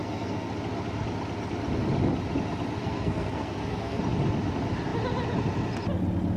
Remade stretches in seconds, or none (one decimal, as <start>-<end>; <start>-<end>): 0.0-0.5; 2.8-4.0